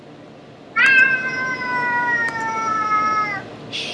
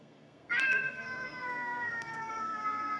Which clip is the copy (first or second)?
second